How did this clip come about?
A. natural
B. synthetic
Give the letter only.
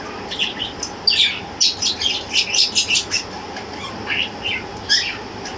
A